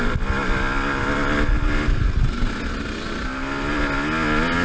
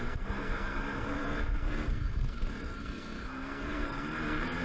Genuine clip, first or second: first